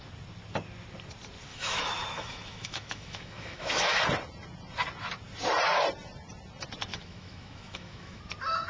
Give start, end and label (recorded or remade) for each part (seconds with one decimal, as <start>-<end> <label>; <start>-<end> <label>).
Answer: 0.0-1.5 recorded; 1.5-4.0 remade; 4.0-6.9 recorded; 6.9-8.2 remade; 8.2-8.7 recorded